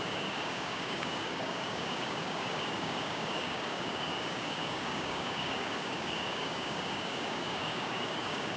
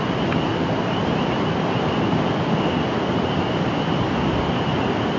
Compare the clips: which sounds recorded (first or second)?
second